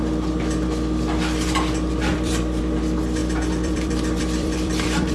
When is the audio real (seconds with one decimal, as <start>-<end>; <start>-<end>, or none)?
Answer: 0.0-2.1; 2.6-3.2